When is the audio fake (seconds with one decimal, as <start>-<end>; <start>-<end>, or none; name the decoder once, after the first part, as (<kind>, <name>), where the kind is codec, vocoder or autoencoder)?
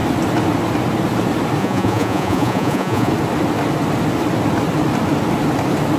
1.6-3.1 (vocoder, Vocos)